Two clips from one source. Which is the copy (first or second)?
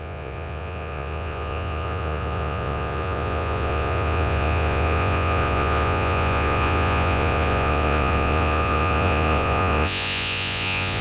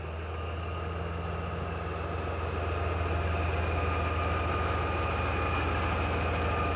first